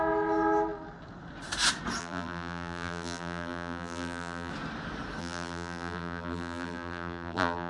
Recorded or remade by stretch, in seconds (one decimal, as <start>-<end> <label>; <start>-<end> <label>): 0.0-2.0 recorded; 2.0-4.5 remade; 4.5-5.2 recorded; 5.2-7.7 remade